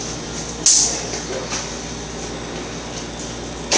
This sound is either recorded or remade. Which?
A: recorded